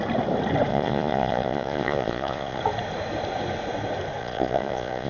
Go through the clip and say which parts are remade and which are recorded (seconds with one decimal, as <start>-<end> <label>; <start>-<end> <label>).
0.0-0.7 recorded; 0.7-2.6 remade; 2.6-4.2 recorded; 4.2-5.1 remade